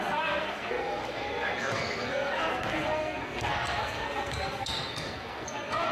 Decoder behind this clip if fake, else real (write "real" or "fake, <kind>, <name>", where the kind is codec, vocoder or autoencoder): fake, codec, SNAC